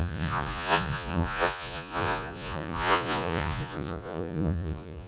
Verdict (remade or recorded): remade